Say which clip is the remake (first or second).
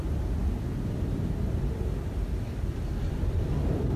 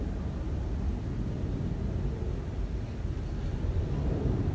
first